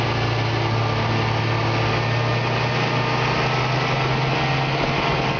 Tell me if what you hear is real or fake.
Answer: real